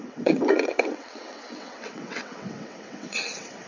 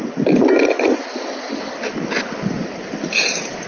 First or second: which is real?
second